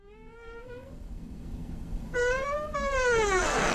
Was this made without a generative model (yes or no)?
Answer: no